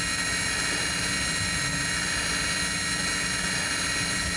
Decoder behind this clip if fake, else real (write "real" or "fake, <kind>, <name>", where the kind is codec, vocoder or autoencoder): real